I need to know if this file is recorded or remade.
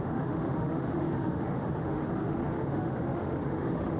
remade